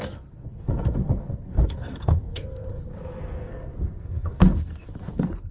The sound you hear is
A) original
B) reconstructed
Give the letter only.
B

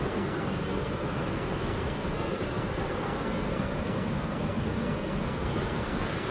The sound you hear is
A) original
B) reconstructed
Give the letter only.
B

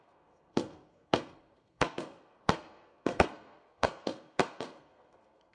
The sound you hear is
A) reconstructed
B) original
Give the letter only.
A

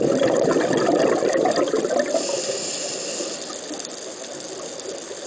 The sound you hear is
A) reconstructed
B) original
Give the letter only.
B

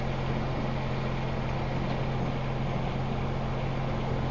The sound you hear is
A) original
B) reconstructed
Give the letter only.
A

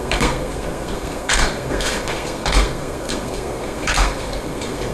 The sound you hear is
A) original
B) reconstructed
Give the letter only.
B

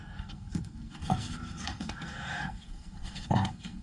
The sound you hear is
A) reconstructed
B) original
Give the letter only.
A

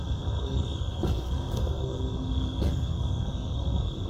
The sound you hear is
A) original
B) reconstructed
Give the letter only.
B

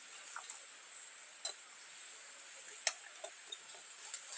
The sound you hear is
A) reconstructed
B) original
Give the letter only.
B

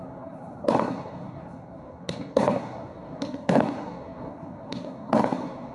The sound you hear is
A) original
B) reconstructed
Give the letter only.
B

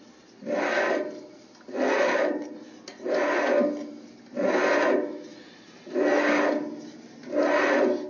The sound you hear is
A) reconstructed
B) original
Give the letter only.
B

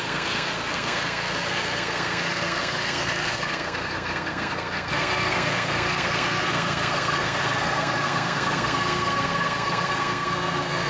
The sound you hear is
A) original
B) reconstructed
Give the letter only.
B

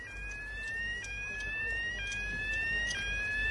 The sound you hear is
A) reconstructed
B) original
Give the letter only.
B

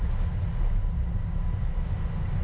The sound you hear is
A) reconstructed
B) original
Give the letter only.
B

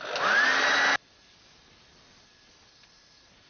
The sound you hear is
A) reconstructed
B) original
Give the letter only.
B